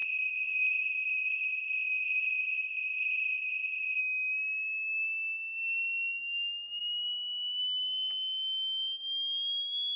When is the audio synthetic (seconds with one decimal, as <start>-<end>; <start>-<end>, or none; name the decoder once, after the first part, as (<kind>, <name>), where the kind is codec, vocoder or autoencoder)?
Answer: 0.0-4.0 (codec, HILCodec)